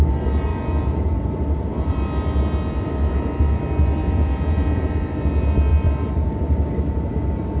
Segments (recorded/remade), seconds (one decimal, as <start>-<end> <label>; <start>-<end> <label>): 0.0-0.5 recorded; 0.5-1.3 remade; 1.3-4.0 recorded; 4.0-4.9 remade; 4.9-7.6 recorded